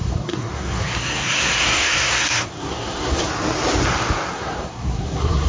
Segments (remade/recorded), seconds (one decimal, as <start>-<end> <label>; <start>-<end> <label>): 0.0-3.3 remade; 3.3-4.3 recorded; 4.3-5.5 remade